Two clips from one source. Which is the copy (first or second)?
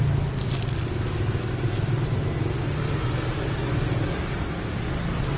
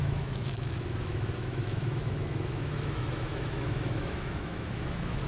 second